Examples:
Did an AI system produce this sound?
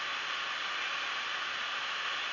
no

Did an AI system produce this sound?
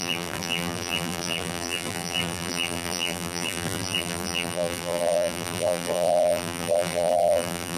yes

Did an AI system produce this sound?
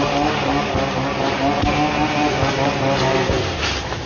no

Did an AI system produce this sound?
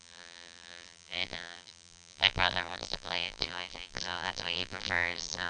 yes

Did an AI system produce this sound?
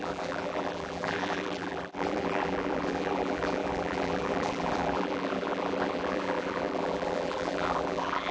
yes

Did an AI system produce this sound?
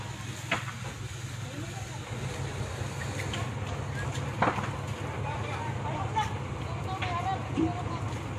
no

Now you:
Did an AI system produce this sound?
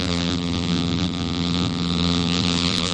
yes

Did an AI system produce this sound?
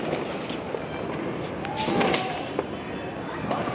no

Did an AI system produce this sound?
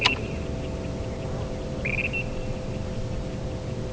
no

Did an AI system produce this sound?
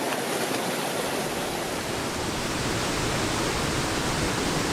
no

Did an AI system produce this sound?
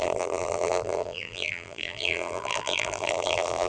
yes